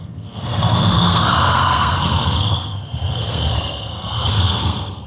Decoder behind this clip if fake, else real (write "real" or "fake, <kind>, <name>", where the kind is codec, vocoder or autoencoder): fake, codec, SNAC